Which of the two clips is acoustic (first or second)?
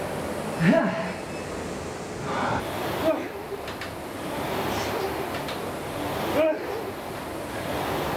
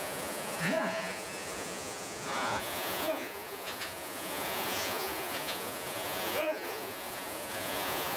first